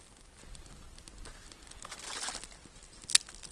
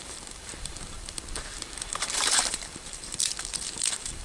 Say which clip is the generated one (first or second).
second